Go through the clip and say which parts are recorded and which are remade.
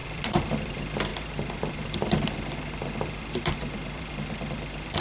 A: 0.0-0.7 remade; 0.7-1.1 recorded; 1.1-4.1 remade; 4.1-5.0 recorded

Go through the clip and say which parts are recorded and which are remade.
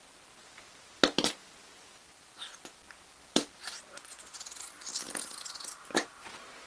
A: 0.0-1.4 recorded; 1.4-3.8 remade; 3.8-4.9 recorded; 4.9-6.7 remade